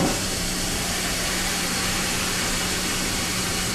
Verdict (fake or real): fake